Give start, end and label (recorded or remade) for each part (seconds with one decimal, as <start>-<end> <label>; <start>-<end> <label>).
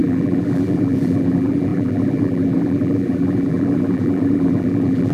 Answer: 0.0-5.1 remade